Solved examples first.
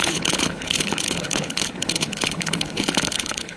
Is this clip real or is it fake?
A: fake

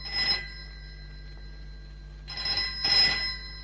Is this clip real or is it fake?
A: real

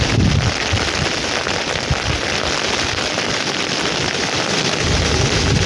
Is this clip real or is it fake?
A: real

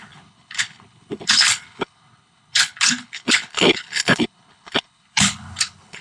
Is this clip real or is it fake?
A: fake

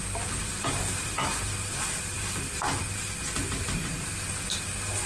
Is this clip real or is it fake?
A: real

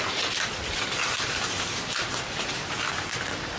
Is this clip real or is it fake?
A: real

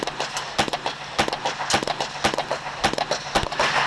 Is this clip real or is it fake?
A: real